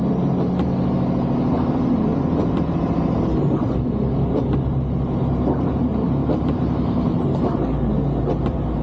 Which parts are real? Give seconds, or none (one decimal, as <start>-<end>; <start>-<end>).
0.0-8.8